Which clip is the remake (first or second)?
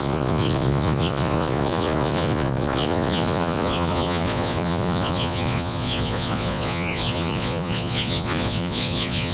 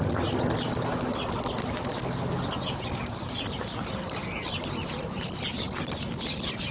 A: first